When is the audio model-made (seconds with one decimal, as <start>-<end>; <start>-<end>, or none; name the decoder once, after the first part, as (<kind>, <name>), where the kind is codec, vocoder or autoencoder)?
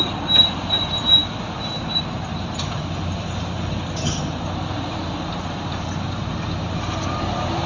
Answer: none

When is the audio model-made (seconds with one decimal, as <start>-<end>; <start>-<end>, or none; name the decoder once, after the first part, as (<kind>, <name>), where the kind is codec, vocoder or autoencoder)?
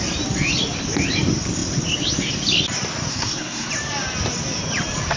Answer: 3.1-3.7 (codec, SNAC)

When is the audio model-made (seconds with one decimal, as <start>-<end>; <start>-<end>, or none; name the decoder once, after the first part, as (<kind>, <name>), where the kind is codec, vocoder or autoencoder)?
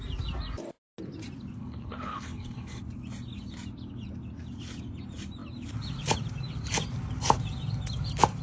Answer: 1.6-2.8 (codec, HILCodec)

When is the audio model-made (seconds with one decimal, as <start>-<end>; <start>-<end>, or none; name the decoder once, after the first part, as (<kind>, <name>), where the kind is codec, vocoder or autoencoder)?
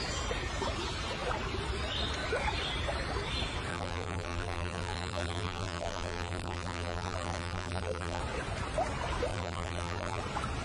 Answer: 3.7-8.2 (vocoder, BigVGAN v2); 9.3-10.2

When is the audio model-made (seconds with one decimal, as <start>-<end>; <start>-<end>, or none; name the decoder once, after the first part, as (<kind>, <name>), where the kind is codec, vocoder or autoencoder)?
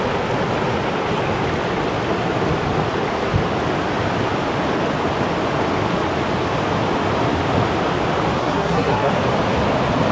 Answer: 8.4-9.1 (codec, SNAC)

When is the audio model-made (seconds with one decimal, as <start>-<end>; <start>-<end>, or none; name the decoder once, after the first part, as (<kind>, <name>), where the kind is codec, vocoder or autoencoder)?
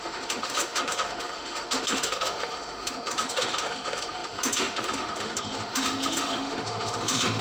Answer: 0.0-7.4 (autoencoder, DAC-VAE)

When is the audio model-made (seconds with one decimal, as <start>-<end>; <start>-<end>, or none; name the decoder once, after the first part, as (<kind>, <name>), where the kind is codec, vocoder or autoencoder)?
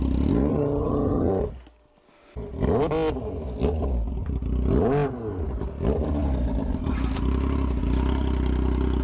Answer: 0.5-1.3 (vocoder, HiFi-GAN)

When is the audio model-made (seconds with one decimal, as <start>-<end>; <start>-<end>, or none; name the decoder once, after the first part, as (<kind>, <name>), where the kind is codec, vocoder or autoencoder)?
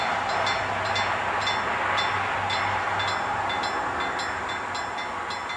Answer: none